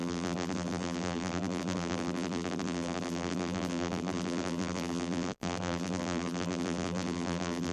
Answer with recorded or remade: remade